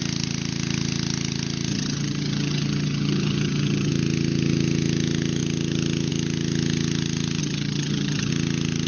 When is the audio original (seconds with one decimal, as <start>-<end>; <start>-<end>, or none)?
0.0-1.7; 3.9-7.4; 8.3-8.9